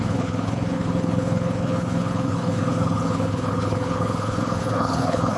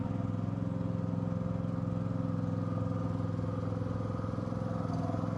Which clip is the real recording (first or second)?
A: second